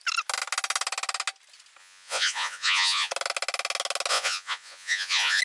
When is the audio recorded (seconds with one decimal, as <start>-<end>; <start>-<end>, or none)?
0.0-1.8; 3.1-4.1